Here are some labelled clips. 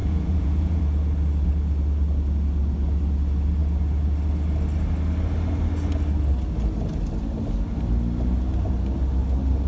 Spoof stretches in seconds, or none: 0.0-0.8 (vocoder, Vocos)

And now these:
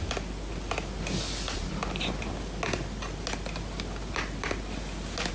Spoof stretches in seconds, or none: none

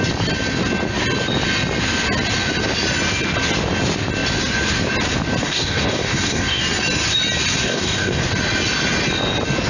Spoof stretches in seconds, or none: 5.4-6.6 (codec, DAC); 7.6-8.2

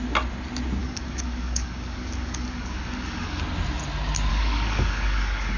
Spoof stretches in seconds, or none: 0.8-3.4 (codec, DAC); 4.3-5.6

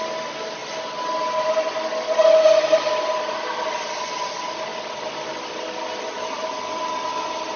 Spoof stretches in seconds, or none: none

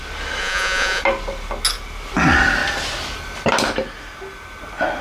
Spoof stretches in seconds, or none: 0.4-1.0 (vocoder, Vocos)

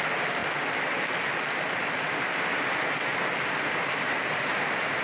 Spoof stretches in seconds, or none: none